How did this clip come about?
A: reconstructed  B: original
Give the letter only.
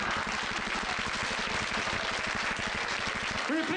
B